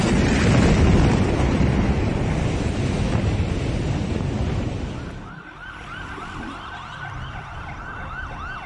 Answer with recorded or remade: remade